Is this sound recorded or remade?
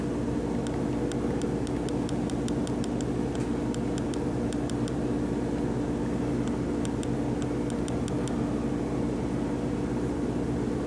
recorded